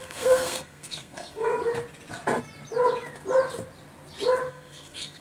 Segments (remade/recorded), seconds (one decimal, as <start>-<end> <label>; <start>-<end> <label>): 0.0-1.5 remade; 1.5-4.5 recorded; 4.5-5.2 remade